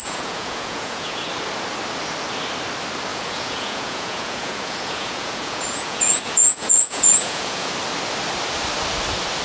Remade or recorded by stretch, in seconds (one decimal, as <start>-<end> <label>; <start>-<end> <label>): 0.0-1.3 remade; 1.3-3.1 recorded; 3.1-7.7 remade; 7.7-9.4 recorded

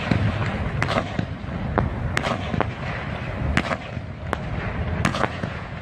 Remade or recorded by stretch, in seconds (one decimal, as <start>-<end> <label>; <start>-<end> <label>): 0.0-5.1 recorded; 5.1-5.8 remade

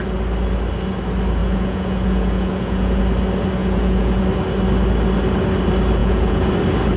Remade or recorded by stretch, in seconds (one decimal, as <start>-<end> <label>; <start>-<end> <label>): 0.0-1.4 recorded; 1.4-3.0 remade; 3.0-3.6 recorded; 3.6-4.2 remade; 4.2-6.0 recorded; 6.0-6.5 remade; 6.5-7.0 recorded

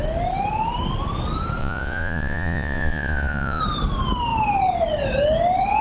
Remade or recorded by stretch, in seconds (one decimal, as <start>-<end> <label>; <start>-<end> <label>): 0.0-1.6 recorded; 1.6-3.6 remade; 3.6-5.8 recorded